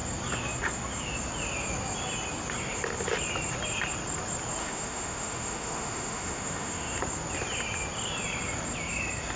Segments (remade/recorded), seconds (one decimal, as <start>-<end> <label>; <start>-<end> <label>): 0.0-4.6 recorded; 4.6-7.0 remade; 7.0-9.4 recorded